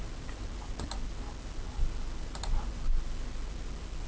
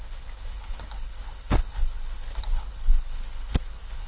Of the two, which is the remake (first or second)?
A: second